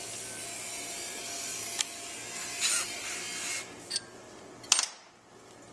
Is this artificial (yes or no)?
no